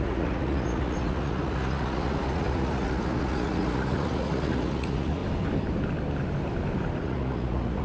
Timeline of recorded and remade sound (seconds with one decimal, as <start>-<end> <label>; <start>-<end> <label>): 0.0-5.2 remade; 5.2-7.0 recorded; 7.0-7.8 remade